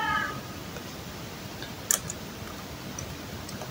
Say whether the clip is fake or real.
real